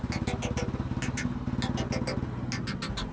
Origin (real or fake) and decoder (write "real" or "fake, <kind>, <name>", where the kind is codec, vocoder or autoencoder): real